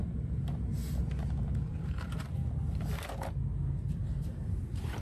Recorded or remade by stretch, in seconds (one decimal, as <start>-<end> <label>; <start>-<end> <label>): 0.0-1.0 recorded; 1.0-2.4 remade; 2.4-3.9 recorded; 3.9-5.0 remade